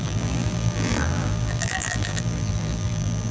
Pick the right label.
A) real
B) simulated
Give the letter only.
B